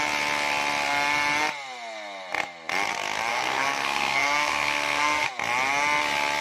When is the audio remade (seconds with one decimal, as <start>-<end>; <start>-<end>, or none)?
3.3-5.3